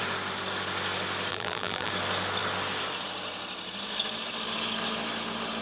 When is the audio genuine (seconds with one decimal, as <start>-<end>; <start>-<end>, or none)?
0.0-1.3; 1.9-5.6